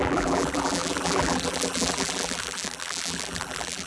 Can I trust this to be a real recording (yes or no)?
no